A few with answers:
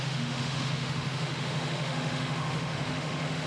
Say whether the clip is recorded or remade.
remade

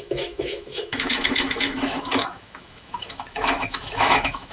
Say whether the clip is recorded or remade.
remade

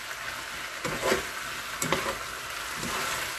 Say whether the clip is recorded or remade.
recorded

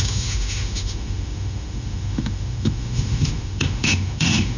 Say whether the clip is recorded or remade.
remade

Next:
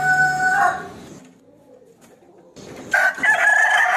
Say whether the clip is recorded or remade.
recorded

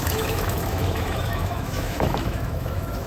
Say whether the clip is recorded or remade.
remade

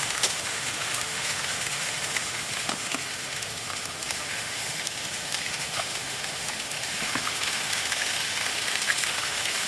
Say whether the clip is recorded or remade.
remade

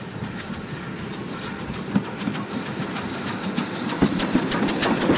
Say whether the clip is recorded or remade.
recorded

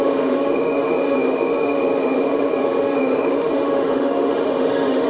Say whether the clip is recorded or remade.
remade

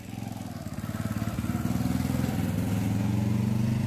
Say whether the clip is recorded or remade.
recorded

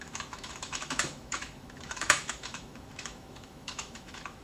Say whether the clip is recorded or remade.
remade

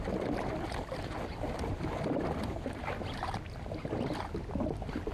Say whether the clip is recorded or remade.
recorded